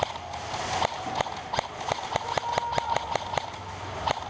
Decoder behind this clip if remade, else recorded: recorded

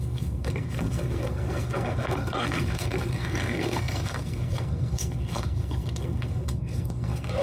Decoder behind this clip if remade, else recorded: remade, codec, SNAC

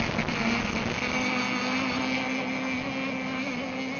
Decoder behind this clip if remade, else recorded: recorded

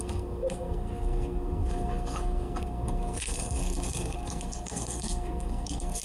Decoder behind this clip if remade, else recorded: remade, codec, SNAC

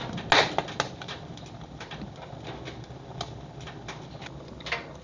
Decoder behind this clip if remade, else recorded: recorded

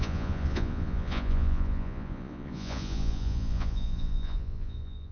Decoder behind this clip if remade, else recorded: remade, vocoder, Vocos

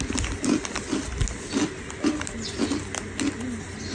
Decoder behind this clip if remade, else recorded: recorded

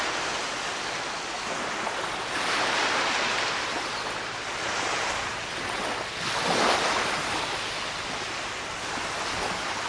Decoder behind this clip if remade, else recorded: recorded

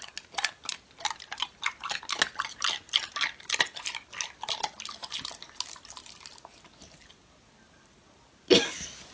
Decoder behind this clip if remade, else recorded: recorded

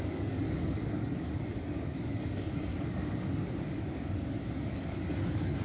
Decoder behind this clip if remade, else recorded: remade, codec, DAC